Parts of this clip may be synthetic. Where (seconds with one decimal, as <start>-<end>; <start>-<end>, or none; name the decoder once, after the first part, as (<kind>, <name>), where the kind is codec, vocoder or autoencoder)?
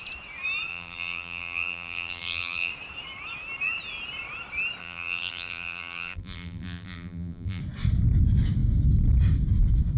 0.7-2.7 (vocoder, BigVGAN v2); 4.8-7.6